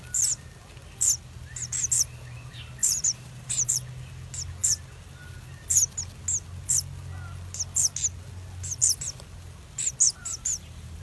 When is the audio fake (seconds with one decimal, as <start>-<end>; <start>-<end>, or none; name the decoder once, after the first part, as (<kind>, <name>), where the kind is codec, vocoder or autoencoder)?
2.8-3.7 (vocoder, BigVGAN v2); 10.2-11.0